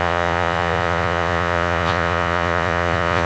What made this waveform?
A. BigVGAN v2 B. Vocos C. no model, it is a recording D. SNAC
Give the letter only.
B